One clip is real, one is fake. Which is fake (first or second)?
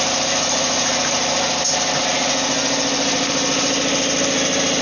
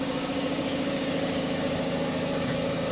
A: second